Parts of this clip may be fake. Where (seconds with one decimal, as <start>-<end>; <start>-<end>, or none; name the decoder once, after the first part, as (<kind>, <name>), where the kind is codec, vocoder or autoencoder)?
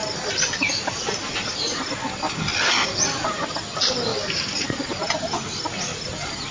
none